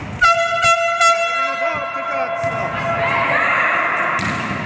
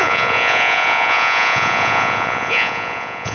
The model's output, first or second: second